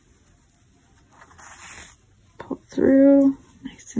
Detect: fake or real real